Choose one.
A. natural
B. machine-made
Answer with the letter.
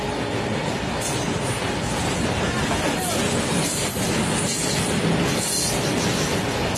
A